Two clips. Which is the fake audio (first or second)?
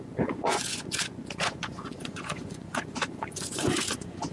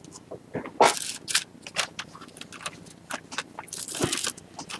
first